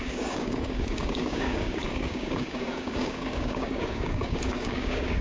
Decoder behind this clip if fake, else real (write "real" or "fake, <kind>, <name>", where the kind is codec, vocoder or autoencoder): fake, codec, DAC